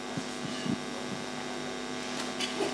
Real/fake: real